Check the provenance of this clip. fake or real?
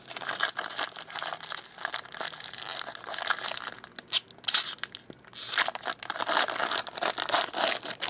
real